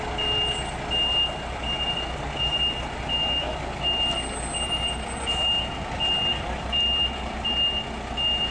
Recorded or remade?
recorded